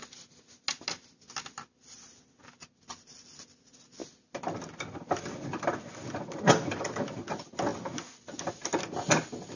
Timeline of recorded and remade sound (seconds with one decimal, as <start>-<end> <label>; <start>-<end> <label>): 0.0-9.6 recorded